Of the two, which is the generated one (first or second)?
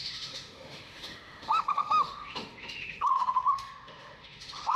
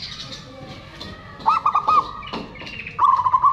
first